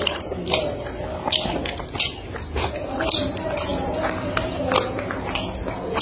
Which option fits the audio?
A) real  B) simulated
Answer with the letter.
A